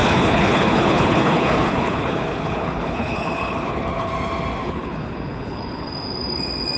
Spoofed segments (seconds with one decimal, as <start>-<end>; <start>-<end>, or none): 0.0-4.1; 4.6-5.9